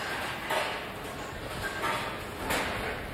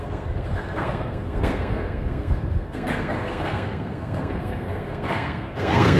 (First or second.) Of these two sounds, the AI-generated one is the second